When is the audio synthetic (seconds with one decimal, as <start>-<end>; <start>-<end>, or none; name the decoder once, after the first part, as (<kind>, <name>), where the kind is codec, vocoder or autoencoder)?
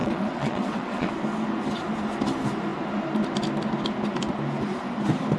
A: 0.0-1.1 (vocoder, WaveNeXt)